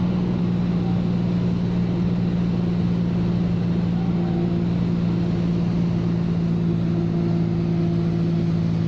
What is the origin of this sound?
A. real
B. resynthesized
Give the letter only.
A